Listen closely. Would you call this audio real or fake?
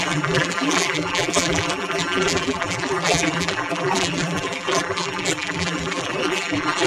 fake